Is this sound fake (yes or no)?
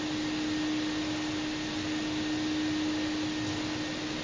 no